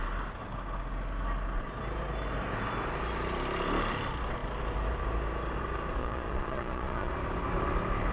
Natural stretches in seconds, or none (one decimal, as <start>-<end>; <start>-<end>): 0.0-6.0; 7.1-8.1